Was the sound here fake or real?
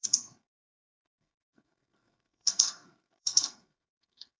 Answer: fake